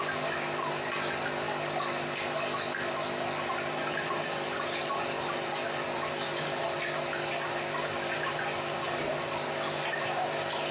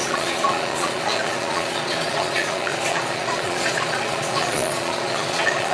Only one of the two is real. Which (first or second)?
first